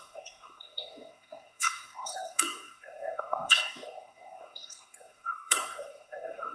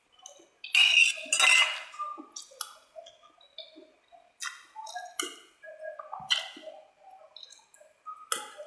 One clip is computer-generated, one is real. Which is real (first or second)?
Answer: second